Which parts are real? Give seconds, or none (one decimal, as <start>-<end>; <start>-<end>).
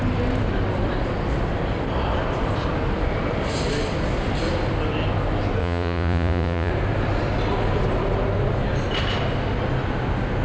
0.0-5.6; 6.7-10.4